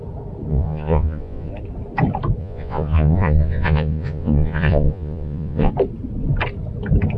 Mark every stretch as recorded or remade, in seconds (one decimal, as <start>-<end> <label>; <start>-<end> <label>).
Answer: 0.0-0.5 recorded; 0.5-1.5 remade; 1.5-2.4 recorded; 2.4-5.7 remade; 5.7-7.2 recorded